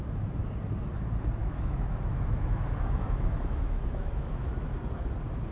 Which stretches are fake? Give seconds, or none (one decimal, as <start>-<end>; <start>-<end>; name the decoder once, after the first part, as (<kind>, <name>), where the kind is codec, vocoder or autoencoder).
1.4-4.7 (autoencoder, DAC-VAE)